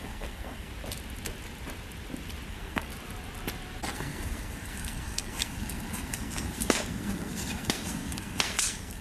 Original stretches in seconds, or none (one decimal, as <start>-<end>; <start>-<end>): 0.7-2.5; 2.9-3.9